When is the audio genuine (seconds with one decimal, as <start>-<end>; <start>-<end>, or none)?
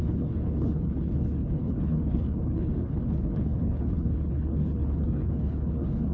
none